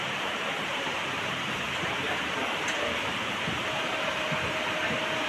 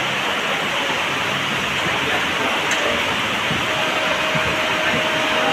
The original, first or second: second